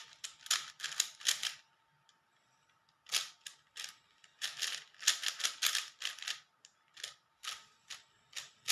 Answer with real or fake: real